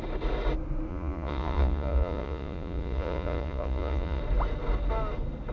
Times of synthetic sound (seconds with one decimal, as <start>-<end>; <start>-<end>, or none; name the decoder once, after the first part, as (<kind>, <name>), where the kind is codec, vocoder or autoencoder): 0.9-4.2 (vocoder, Vocos)